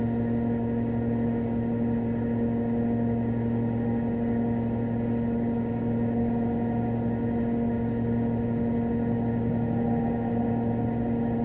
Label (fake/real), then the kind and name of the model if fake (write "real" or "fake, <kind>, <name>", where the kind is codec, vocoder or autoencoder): real